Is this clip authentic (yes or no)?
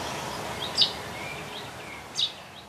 yes